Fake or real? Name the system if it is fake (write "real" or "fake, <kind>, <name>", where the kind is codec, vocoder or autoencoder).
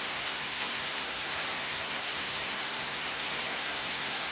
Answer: fake, codec, SNAC